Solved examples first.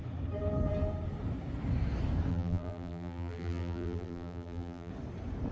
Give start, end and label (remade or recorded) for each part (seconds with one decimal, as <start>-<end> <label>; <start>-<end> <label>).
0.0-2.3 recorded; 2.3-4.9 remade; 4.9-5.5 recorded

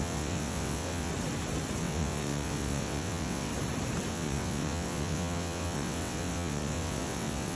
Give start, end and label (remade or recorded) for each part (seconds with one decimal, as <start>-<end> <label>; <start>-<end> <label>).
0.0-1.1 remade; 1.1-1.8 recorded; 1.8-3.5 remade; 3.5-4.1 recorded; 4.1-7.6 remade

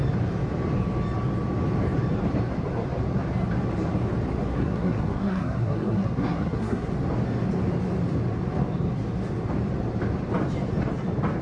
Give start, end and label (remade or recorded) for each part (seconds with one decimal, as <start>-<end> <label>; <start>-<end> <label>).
0.0-4.5 recorded; 4.5-6.9 remade; 6.9-11.4 recorded

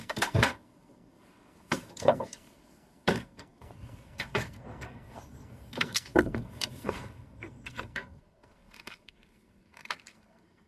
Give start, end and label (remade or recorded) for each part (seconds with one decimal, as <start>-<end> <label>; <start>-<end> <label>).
0.0-10.7 remade

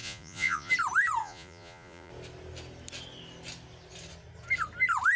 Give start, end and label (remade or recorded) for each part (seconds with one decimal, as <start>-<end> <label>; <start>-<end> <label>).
0.0-0.7 remade; 0.7-1.2 recorded; 1.2-2.1 remade; 2.1-5.2 recorded